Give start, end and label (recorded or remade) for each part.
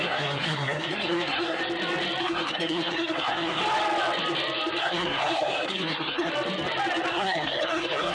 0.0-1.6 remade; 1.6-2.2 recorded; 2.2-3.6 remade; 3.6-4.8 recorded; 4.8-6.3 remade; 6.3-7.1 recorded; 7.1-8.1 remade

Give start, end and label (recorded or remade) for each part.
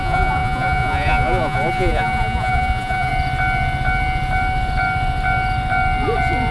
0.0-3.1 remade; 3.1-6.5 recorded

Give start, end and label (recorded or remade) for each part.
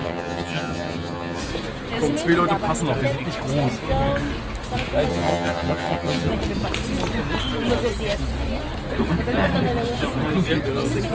0.0-1.4 remade; 1.4-5.1 recorded; 5.1-6.3 remade; 6.3-11.1 recorded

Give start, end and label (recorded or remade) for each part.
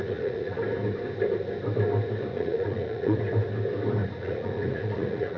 0.0-0.6 remade; 0.6-2.3 recorded; 2.3-3.2 remade; 3.2-4.0 recorded; 4.0-5.4 remade